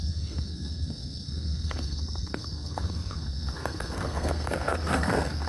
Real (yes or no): no